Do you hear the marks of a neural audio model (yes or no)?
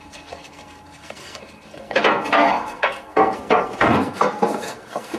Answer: yes